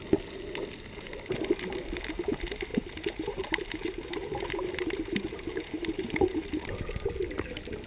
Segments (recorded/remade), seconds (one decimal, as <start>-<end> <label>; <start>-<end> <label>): 0.0-2.7 recorded; 2.7-6.9 remade; 6.9-7.9 recorded